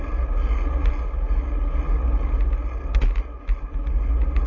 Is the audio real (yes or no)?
yes